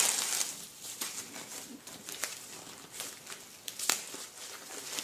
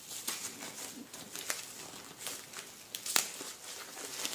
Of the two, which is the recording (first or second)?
second